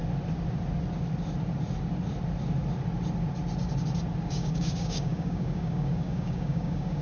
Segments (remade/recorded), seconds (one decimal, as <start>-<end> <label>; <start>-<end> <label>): 0.0-4.2 recorded; 4.2-7.0 remade